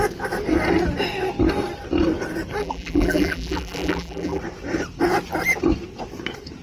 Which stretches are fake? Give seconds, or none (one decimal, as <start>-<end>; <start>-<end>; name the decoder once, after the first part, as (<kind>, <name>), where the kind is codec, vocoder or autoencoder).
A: 2.6-4.4 (vocoder, BigVGAN v2)